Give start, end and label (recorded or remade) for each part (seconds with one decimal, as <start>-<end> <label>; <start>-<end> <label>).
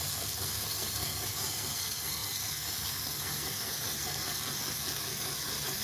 0.0-5.8 remade